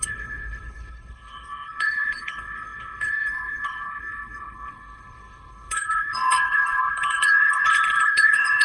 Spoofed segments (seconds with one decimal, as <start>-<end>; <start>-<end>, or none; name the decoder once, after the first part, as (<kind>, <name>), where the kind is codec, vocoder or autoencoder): 0.0-8.6 (codec, HILCodec)